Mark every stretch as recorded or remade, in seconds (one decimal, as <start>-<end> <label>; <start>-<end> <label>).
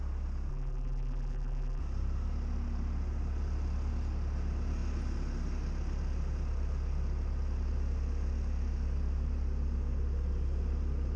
0.0-0.5 recorded; 0.5-1.8 remade; 1.8-11.2 recorded